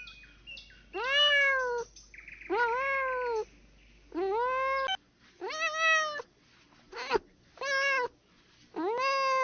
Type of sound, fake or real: real